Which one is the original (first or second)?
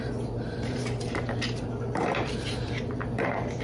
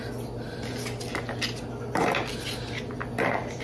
second